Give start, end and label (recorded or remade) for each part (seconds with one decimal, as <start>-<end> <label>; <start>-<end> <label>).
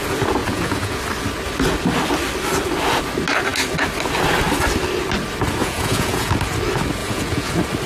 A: 0.0-0.4 recorded; 0.4-1.0 remade; 1.0-5.6 recorded; 5.6-6.3 remade; 6.3-7.0 recorded; 7.0-7.5 remade; 7.5-7.9 recorded